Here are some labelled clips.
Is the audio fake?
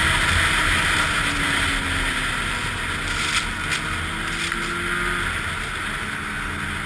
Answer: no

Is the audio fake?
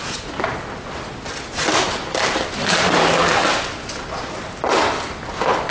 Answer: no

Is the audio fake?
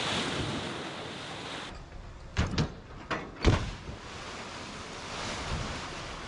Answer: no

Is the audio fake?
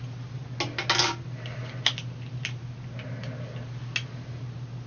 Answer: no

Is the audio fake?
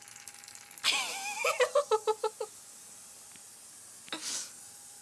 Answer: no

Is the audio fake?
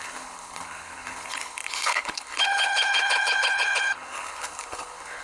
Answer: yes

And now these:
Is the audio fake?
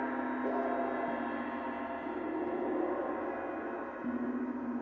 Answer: no